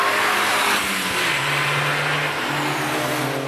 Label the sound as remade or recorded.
recorded